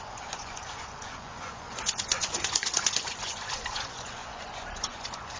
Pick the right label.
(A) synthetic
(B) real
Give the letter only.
A